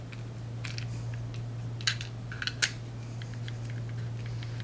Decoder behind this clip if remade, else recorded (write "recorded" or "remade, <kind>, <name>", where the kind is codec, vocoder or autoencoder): recorded